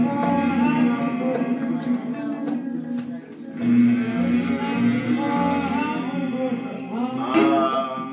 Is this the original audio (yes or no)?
yes